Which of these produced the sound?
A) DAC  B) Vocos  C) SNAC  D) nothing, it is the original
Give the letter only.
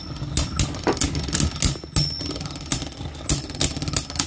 D